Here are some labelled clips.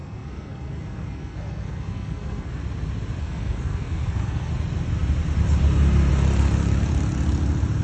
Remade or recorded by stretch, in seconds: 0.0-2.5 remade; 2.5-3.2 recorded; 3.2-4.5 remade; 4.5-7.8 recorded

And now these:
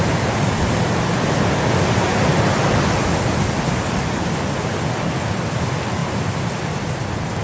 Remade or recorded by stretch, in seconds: 0.0-7.4 recorded

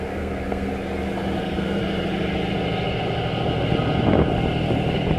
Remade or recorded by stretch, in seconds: 0.0-0.7 remade; 0.7-1.4 recorded; 1.4-1.8 remade; 1.8-5.2 recorded

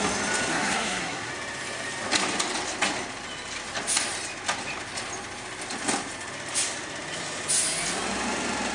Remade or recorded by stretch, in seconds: 0.0-0.5 recorded; 0.5-1.3 remade; 1.3-8.7 recorded

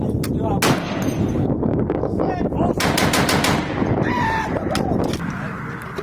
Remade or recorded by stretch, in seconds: 0.0-1.4 recorded; 1.4-2.3 remade; 2.3-6.0 recorded